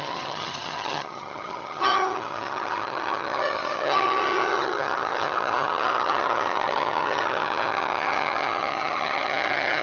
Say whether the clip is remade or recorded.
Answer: remade